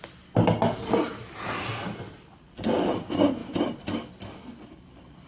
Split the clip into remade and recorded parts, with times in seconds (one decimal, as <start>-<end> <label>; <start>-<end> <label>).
0.0-5.3 recorded